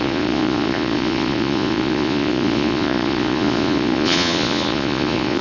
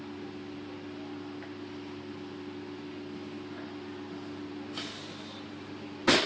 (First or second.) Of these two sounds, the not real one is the first